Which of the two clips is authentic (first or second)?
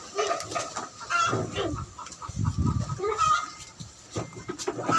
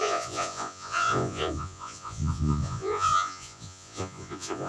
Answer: first